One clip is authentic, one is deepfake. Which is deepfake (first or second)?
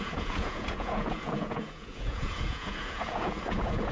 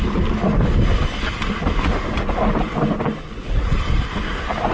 first